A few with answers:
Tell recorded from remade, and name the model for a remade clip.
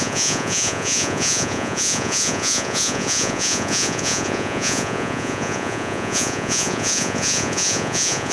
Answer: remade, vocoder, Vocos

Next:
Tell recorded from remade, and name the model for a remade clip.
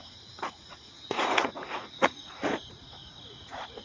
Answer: remade, vocoder, Vocos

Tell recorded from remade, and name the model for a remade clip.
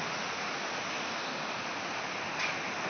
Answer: recorded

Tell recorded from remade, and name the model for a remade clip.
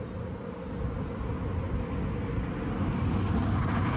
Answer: recorded